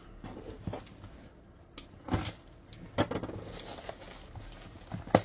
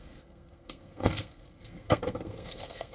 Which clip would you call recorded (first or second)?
first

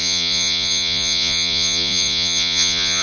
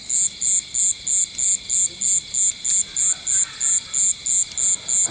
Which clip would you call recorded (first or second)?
second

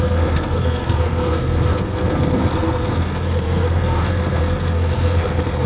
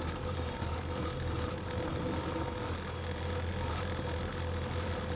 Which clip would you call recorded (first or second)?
second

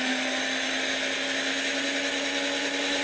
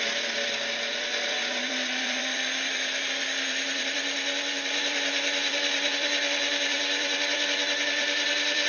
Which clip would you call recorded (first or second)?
first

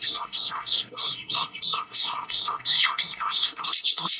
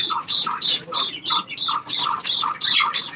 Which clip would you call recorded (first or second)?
second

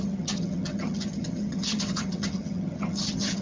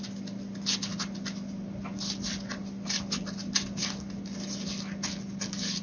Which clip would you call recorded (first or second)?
second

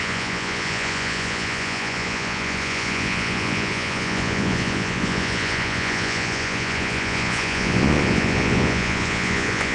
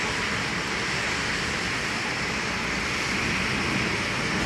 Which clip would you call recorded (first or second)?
second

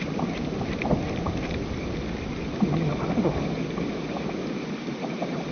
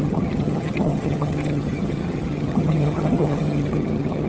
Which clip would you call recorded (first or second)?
first